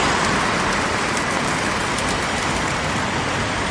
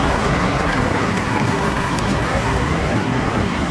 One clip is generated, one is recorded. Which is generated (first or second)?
second